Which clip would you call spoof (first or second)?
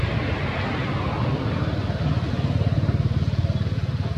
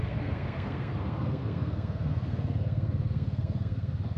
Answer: second